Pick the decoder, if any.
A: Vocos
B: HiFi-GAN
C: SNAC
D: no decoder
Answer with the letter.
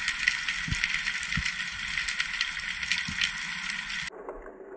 D